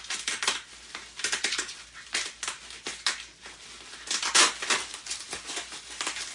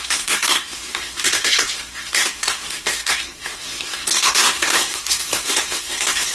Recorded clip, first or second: first